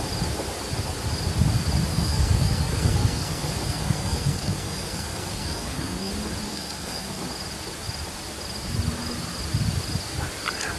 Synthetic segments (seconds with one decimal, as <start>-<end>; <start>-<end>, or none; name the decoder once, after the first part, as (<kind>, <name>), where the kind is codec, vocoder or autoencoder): 1.9-6.1 (codec, SNAC); 6.5-7.2